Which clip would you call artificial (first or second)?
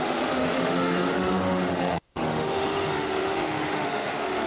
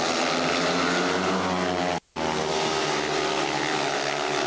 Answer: first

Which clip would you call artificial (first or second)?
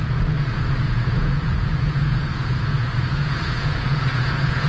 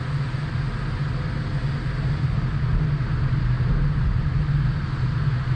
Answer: first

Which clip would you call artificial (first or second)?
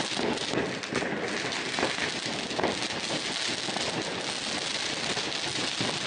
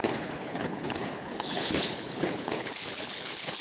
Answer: second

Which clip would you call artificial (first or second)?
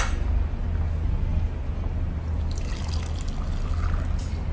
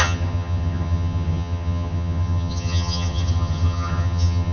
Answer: second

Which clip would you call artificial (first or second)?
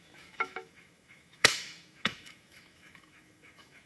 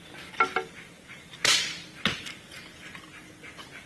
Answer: first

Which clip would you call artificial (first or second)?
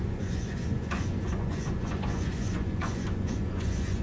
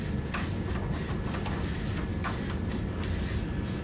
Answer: first